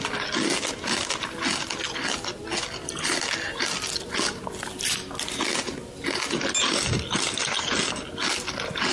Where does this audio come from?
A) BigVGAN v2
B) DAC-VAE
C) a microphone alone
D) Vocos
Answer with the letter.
C